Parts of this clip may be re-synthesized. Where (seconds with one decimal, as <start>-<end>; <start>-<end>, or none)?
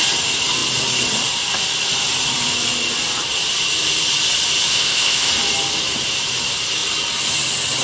4.7-5.3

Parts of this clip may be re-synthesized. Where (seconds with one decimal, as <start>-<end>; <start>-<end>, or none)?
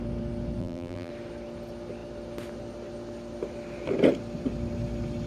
0.6-1.1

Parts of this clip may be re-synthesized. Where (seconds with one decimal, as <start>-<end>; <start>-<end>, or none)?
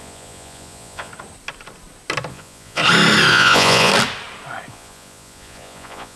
0.0-1.1; 2.3-2.8; 3.3-3.9; 4.7-6.2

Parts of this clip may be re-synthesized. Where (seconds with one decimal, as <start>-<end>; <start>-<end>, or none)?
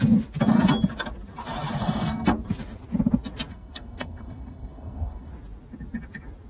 1.8-2.3; 3.5-5.3